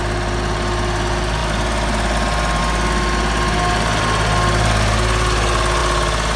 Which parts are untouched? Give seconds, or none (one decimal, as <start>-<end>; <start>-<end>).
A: 0.0-6.4